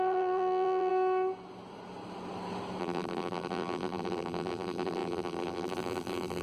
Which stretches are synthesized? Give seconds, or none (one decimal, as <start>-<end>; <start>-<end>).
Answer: 0.0-0.9; 2.8-6.4